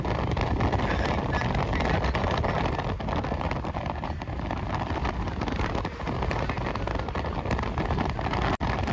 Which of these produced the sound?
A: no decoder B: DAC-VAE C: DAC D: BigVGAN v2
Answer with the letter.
A